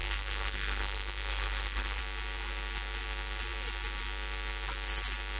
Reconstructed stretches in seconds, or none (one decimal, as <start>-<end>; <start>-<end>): 0.0-2.0